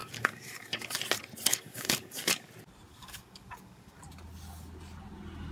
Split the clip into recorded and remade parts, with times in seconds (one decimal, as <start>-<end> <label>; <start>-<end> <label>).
0.0-1.0 remade; 1.0-1.5 recorded; 1.5-2.5 remade; 2.5-2.9 recorded; 2.9-4.0 remade; 4.0-5.5 recorded